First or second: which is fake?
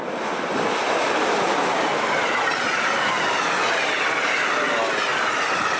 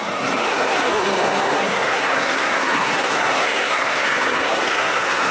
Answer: second